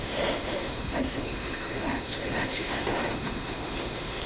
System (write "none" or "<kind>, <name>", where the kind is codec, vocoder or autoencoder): autoencoder, DAC-VAE